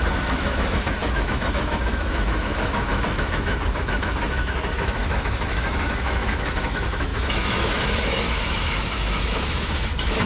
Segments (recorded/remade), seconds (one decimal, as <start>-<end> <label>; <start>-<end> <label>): 0.0-10.3 remade